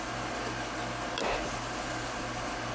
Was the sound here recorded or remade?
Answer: recorded